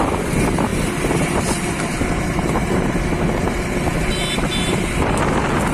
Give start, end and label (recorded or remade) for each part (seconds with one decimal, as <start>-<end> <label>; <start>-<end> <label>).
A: 0.0-0.7 recorded; 0.7-4.1 remade; 4.1-5.7 recorded